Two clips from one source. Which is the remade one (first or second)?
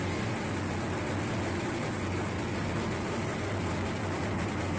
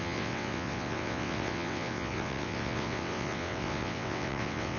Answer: second